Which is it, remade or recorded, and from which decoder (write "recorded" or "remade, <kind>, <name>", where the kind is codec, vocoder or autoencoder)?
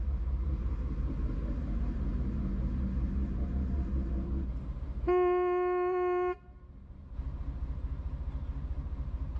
remade, vocoder, BigVGAN v2